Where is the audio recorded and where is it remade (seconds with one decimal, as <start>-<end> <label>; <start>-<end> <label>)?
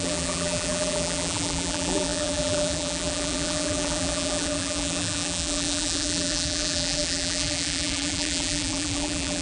0.0-9.4 remade